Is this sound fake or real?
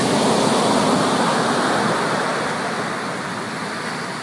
real